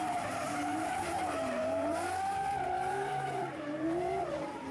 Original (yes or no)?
no